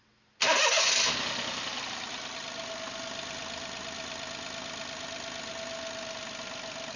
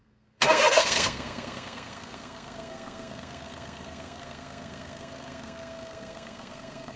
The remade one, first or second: second